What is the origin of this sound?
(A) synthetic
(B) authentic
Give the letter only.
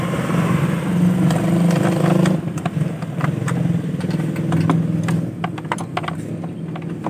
B